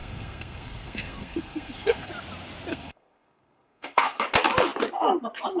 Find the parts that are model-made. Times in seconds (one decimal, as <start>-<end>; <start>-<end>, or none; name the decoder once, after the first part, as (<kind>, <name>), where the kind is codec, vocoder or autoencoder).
0.0-2.1 (codec, SNAC); 2.7-4.2